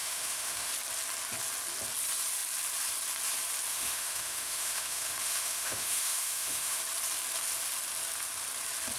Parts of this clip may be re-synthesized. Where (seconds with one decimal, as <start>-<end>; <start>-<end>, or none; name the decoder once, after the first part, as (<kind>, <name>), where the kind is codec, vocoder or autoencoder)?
0.0-0.7 (autoencoder, DAC-VAE); 3.7-6.8